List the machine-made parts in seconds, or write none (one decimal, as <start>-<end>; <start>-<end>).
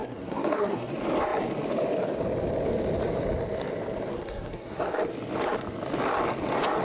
0.0-0.9; 4.1-4.9